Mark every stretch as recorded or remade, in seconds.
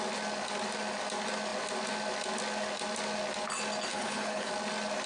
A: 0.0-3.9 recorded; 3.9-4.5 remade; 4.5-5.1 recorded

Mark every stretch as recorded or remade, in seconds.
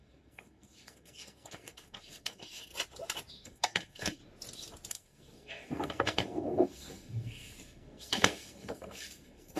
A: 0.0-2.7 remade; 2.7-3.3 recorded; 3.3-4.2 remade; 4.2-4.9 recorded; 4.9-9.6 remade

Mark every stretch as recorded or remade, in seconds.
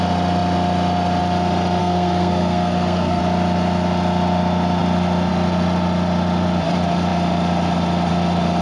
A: 0.0-1.8 recorded; 1.8-3.2 remade; 3.2-8.6 recorded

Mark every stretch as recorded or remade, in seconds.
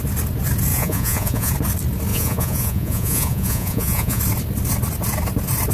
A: 0.0-0.7 recorded; 0.7-1.5 remade; 1.5-2.1 recorded; 2.1-4.2 remade; 4.2-5.7 recorded